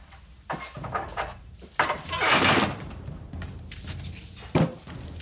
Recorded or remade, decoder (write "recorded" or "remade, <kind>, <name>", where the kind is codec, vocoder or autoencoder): recorded